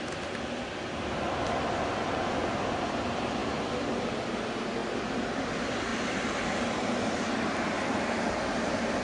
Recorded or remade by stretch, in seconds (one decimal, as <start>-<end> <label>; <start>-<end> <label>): 0.0-5.9 recorded; 5.9-7.1 remade; 7.1-9.0 recorded